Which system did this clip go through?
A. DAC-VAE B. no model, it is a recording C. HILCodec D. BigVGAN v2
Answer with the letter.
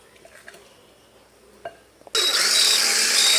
B